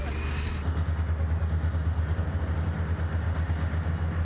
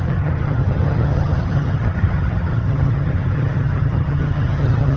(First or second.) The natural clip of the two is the first